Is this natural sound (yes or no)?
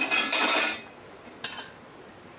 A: yes